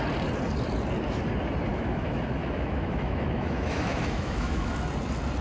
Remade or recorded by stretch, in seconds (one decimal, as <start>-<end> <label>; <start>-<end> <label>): 0.0-1.7 recorded; 1.7-4.7 remade; 4.7-5.4 recorded